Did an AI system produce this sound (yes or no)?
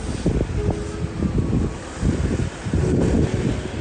no